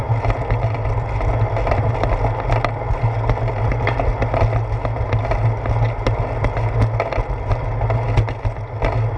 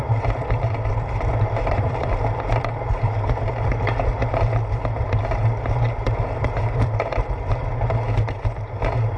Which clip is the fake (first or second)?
second